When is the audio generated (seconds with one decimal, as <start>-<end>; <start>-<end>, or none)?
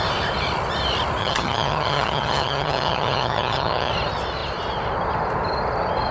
1.2-3.9